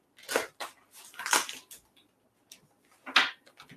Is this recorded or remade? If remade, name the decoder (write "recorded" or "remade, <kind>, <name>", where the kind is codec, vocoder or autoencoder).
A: recorded